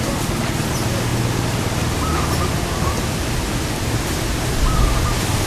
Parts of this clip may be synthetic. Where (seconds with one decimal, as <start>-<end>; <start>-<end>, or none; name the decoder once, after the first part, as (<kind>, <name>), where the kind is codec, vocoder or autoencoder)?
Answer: none